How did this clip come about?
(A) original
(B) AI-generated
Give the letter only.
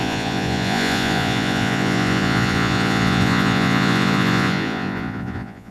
B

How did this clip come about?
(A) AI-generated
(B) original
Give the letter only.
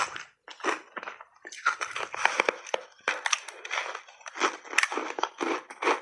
B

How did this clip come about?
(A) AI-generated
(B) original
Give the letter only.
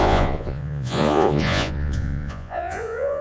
A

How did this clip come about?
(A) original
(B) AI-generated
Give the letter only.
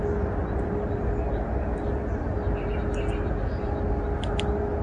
A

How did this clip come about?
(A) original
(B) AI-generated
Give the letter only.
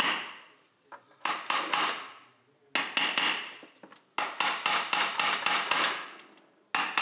A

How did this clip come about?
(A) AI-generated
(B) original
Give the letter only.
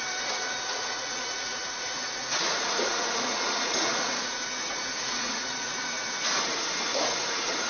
A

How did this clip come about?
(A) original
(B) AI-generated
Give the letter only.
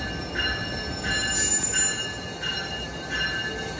A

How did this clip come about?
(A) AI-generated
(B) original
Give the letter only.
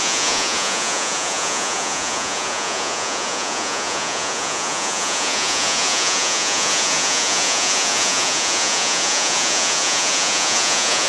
A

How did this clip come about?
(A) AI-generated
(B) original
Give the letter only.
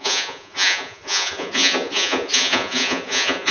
A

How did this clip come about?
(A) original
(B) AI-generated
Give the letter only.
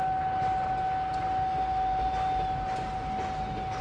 A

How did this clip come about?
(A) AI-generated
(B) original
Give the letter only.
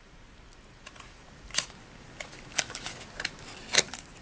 B